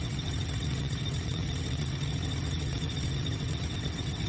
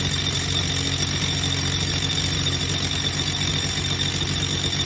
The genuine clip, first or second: second